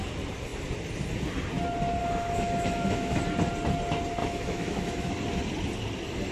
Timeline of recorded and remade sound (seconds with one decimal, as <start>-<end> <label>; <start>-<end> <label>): 0.0-2.0 recorded; 2.0-3.2 remade; 3.2-4.2 recorded; 4.2-5.1 remade; 5.1-6.3 recorded